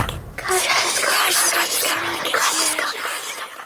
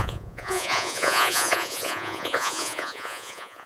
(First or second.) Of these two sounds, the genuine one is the first